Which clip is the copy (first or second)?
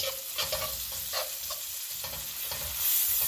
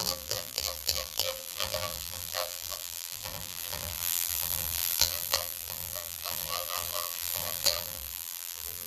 second